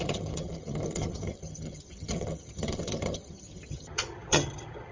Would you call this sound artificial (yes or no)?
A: yes